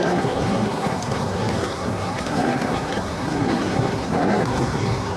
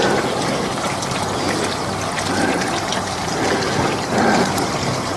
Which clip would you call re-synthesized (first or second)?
first